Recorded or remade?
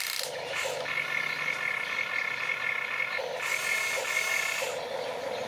recorded